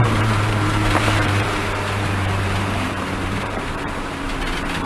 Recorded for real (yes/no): no